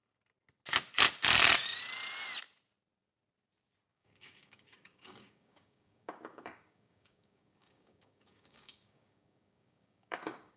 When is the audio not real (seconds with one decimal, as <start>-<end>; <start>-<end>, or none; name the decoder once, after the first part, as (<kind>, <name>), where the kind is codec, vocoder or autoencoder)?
3.9-10.6 (codec, DAC)